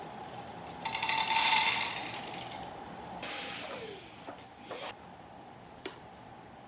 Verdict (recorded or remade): remade